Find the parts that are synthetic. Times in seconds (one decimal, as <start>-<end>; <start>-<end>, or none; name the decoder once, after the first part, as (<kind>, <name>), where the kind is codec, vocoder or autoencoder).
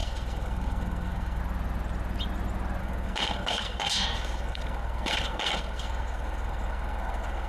0.0-1.4 (codec, SNAC); 2.8-7.5